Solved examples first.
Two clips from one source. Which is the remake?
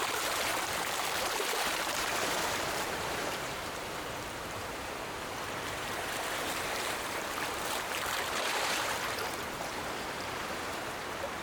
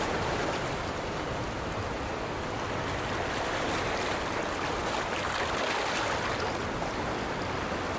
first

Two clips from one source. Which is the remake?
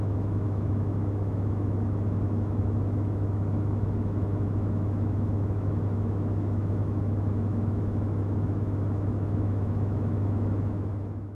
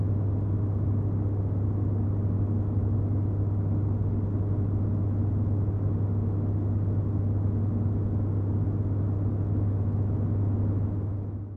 first